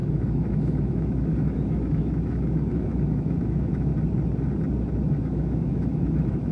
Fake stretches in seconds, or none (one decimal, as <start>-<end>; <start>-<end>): 0.0-3.9; 5.2-6.5